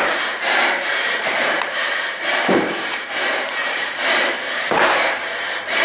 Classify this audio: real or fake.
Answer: fake